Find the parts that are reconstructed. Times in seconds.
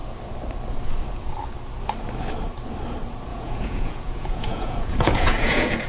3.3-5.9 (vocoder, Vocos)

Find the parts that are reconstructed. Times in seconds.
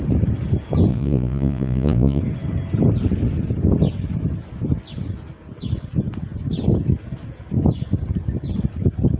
0.9-2.2 (vocoder, Vocos)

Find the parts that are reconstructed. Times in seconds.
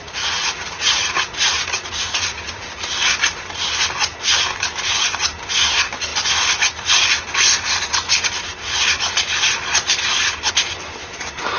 0.0-2.9 (vocoder, Vocos)